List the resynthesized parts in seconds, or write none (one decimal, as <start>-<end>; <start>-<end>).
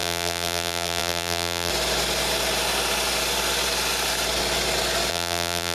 0.0-1.7; 5.1-5.7